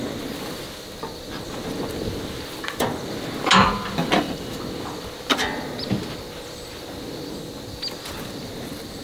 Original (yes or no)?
yes